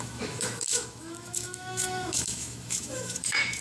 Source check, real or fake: fake